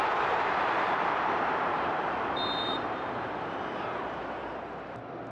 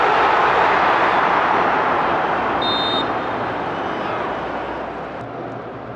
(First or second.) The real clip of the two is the second